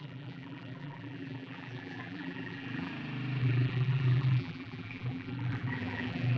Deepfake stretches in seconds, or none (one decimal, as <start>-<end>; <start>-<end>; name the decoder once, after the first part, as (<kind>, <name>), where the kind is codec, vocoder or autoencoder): 0.0-2.9 (vocoder, BigVGAN v2); 3.4-6.4